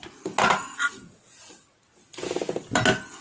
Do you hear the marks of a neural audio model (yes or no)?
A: no